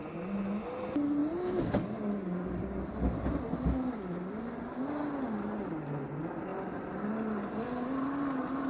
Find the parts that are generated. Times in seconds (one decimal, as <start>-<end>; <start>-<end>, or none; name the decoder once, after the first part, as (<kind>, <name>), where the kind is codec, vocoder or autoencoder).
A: none